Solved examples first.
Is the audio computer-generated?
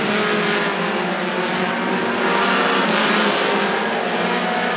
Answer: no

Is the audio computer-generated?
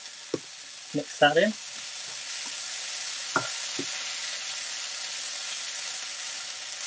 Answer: no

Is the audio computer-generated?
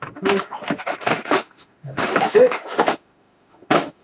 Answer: yes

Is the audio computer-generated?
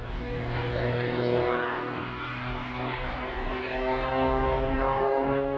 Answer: yes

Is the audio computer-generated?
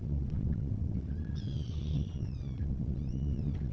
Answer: yes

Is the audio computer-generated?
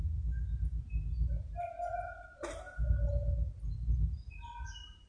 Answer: no